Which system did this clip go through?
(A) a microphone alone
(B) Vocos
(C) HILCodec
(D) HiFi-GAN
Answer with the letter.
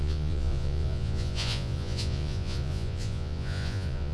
B